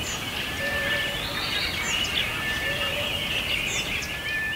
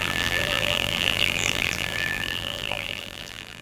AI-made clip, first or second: second